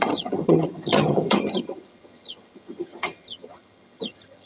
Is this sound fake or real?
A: fake